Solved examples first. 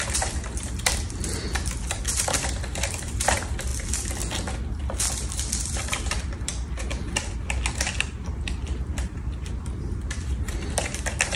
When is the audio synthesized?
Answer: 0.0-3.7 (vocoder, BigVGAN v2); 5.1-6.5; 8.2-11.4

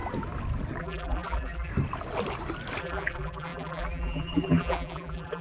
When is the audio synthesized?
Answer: 0.8-1.7 (vocoder, BigVGAN v2); 2.8-5.4

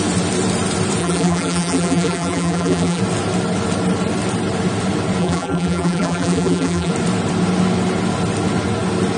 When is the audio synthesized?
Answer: 1.0-3.0 (vocoder, BigVGAN v2); 5.2-6.9

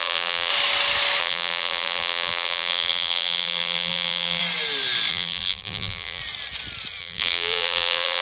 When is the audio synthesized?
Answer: 0.0-0.5 (vocoder, BigVGAN v2); 1.2-4.4; 5.1-6.2; 7.0-8.2

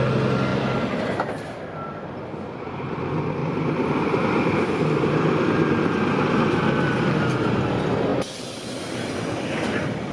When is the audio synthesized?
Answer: 0.5-2.4 (vocoder, BigVGAN v2); 3.4-6.4; 8.1-10.1

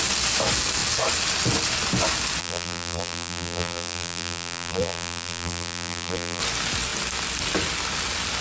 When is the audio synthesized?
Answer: 2.4-6.4 (vocoder, BigVGAN v2)

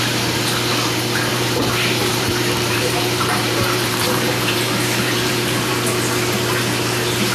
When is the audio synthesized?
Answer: 1.3-5.7 (vocoder, BigVGAN v2)